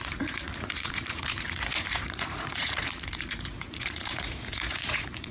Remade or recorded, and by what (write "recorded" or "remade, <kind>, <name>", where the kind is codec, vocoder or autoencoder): remade, vocoder, Vocos